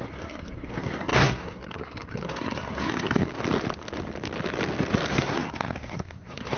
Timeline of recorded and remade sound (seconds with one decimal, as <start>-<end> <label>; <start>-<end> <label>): 0.0-3.3 remade; 3.3-5.1 recorded; 5.1-6.6 remade